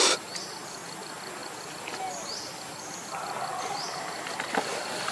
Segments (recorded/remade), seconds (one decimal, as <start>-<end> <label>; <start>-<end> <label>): 0.0-5.1 recorded